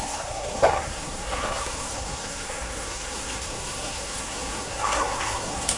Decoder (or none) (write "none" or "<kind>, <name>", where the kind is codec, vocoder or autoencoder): codec, SNAC